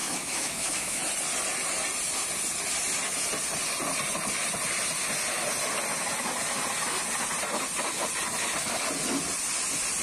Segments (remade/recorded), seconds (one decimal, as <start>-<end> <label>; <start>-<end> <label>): 0.0-1.0 remade; 1.0-10.0 recorded